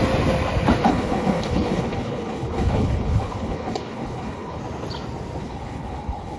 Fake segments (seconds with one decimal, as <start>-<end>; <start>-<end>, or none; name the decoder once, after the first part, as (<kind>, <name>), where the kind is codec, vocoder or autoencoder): 0.8-4.6 (codec, HILCodec); 5.4-6.4